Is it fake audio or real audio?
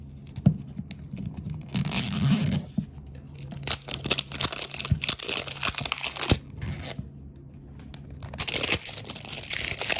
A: real